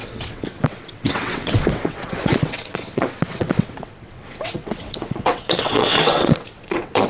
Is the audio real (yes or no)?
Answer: no